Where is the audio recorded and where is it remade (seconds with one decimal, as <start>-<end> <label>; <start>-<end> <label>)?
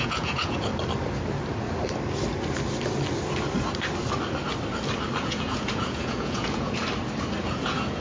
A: 0.0-0.7 remade; 0.7-5.2 recorded; 5.2-6.8 remade; 6.8-7.4 recorded; 7.4-8.0 remade